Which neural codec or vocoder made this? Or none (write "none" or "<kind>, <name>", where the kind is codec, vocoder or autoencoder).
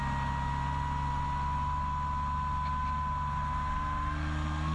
none